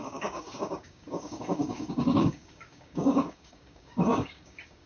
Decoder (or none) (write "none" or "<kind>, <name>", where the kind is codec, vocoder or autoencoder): codec, DAC